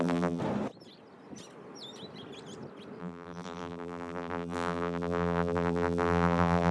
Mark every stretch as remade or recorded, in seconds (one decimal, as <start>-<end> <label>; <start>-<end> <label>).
0.0-0.4 remade; 0.4-3.0 recorded; 3.0-6.7 remade